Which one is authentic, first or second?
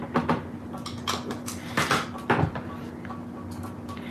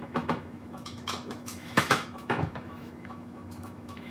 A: first